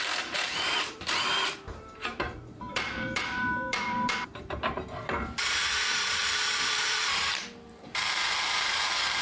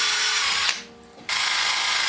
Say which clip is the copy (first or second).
first